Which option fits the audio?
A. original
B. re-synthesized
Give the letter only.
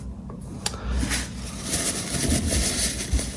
A